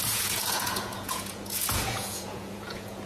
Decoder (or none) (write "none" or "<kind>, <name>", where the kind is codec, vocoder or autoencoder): vocoder, Vocos